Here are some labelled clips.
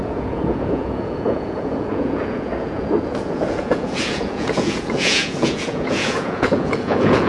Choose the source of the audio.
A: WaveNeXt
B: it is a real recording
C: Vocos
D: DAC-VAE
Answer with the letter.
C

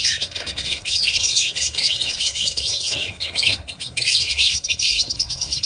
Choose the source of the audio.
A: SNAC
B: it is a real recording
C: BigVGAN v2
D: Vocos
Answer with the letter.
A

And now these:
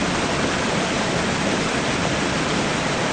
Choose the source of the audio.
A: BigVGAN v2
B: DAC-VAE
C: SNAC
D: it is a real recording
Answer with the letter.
A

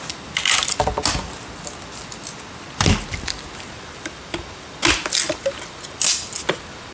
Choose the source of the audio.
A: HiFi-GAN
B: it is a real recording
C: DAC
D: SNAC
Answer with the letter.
B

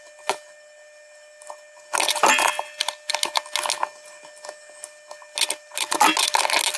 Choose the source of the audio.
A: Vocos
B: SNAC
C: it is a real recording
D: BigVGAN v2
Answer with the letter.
C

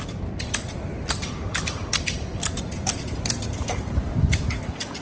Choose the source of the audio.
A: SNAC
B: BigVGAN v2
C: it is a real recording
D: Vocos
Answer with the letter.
B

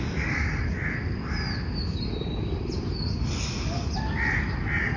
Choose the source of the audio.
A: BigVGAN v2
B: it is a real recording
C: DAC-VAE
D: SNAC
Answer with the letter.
B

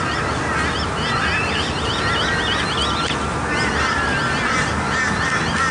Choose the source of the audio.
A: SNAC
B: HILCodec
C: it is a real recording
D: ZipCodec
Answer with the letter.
C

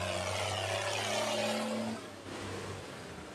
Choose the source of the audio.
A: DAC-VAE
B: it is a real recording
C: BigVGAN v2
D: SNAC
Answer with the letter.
B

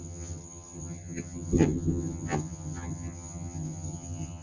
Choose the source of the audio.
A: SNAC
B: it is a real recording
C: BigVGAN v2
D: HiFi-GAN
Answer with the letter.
D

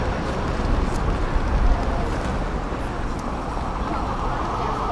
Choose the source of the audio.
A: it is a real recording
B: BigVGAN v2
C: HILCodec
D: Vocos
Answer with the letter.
A